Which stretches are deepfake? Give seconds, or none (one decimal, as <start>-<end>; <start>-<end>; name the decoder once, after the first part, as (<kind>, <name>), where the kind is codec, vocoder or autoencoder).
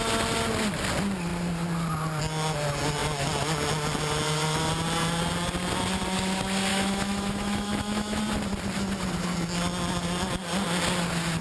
6.7-8.2 (autoencoder, DAC-VAE)